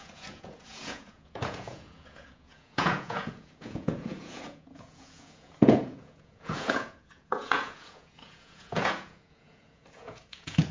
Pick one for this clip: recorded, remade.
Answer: remade